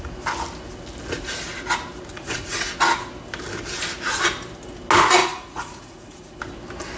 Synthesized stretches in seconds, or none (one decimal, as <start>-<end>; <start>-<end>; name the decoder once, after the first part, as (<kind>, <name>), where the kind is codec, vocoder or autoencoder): 2.1-2.7 (vocoder, Vocos); 5.2-6.4